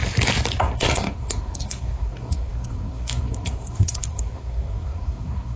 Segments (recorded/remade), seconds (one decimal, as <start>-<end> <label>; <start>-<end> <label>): 0.0-0.6 recorded; 0.6-5.6 remade